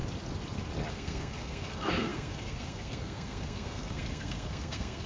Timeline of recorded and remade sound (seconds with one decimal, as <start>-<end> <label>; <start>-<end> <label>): 0.0-0.9 recorded; 0.9-5.1 remade